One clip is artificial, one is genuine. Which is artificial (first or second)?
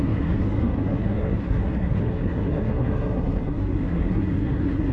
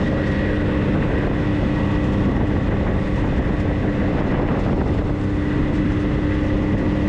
first